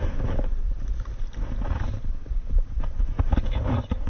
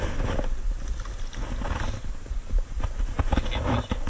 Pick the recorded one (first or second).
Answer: second